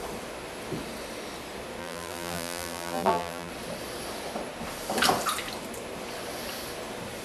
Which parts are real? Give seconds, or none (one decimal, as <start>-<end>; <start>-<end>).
0.0-1.8; 3.5-7.2